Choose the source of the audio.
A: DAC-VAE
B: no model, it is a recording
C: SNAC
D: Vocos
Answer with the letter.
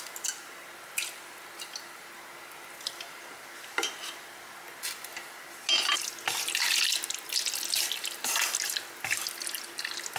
B